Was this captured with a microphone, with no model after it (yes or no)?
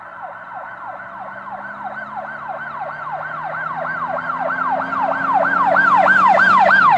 yes